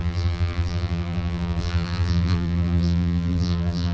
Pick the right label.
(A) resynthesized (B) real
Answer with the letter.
A